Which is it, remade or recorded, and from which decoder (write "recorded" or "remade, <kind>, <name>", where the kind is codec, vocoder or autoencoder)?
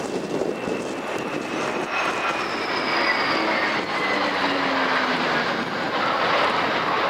recorded